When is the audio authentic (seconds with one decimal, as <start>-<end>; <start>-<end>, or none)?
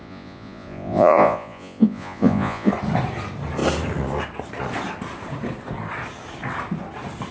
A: 2.7-7.3